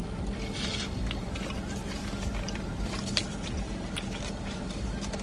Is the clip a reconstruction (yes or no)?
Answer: yes